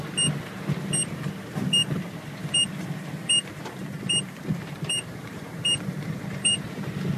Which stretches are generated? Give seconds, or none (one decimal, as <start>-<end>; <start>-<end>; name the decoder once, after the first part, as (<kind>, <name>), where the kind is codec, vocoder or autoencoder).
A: 2.4-6.7 (vocoder, BigVGAN v2)